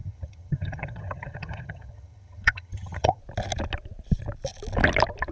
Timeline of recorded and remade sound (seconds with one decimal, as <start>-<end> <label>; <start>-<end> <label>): 0.0-3.2 remade; 3.2-5.3 recorded